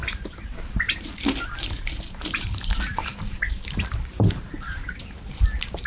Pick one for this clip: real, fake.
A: fake